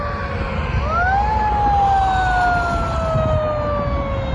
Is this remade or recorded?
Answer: recorded